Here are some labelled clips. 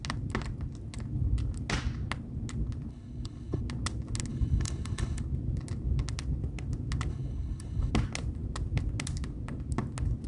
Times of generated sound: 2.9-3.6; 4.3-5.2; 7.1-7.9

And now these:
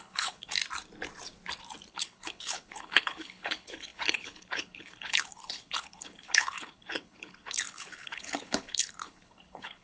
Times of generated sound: 0.0-0.6; 1.9-9.8

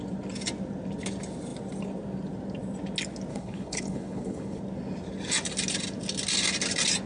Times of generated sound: 3.3-4.6

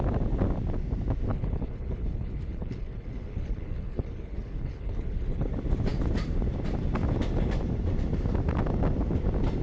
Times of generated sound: 1.3-5.5